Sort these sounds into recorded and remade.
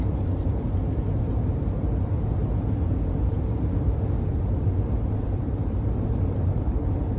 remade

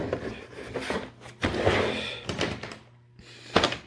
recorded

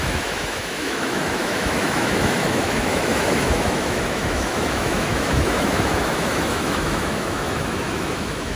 remade